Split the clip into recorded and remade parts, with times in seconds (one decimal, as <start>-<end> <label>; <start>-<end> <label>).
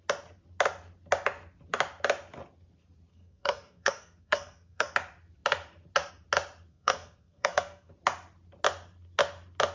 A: 0.0-3.1 recorded; 3.1-4.9 remade; 4.9-6.7 recorded; 6.7-7.9 remade; 7.9-9.7 recorded